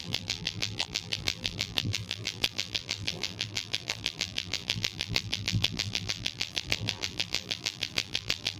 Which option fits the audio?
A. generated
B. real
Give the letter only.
A